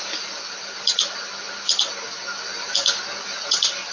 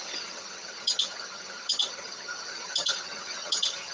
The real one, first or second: first